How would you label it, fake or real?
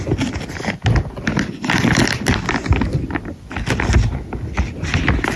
real